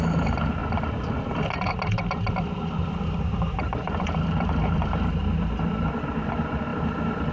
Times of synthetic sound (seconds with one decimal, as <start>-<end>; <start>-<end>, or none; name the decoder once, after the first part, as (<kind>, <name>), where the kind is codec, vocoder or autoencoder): 0.0-0.6 (vocoder, BigVGAN v2); 3.2-6.7